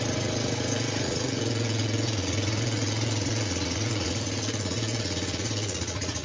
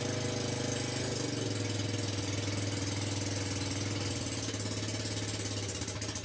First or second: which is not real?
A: first